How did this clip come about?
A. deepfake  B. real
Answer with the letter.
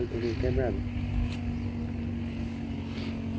B